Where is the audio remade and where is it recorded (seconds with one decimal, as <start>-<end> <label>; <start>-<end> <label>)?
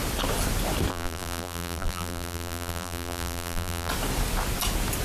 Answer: 0.0-0.9 recorded; 0.9-3.9 remade; 3.9-5.0 recorded